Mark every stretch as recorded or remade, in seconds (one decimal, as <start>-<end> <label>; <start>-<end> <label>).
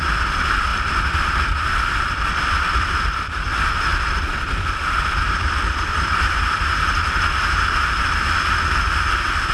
0.0-0.7 recorded; 0.7-3.0 remade; 3.0-3.9 recorded; 3.9-5.1 remade; 5.1-5.9 recorded; 5.9-7.2 remade; 7.2-9.5 recorded